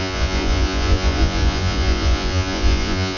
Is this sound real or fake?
fake